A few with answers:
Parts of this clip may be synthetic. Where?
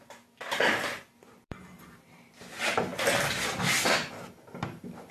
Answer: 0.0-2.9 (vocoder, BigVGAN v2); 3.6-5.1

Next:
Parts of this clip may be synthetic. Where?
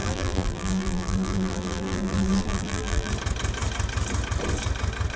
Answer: 0.0-3.1 (vocoder, BigVGAN v2)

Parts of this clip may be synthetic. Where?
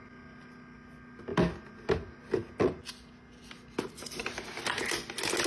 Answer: none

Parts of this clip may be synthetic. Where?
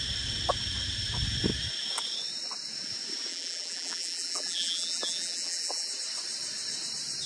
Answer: 3.3-5.9 (vocoder, BigVGAN v2)